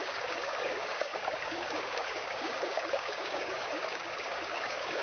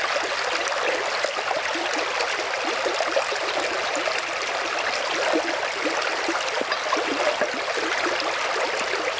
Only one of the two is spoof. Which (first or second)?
first